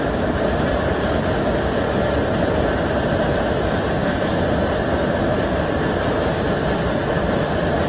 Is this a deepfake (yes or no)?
no